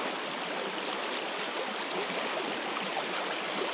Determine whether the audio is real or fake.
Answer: real